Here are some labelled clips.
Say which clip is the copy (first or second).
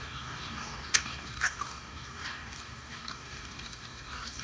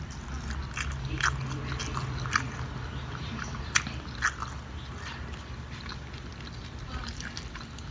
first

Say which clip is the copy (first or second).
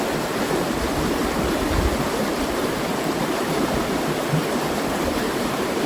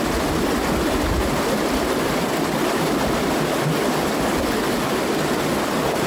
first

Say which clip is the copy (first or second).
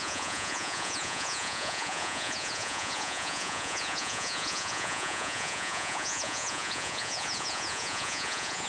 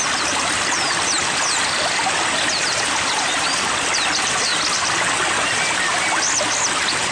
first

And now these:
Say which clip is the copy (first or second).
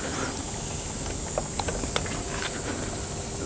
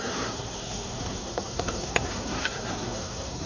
second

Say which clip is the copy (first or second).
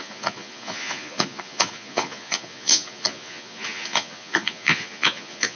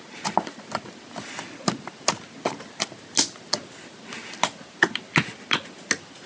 first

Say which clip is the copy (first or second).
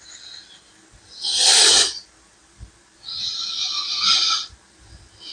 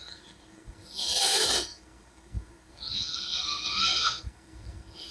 second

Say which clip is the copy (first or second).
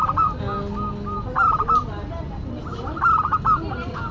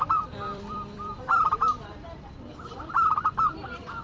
second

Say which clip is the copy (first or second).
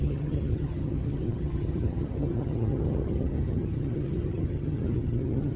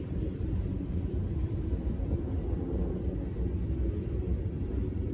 first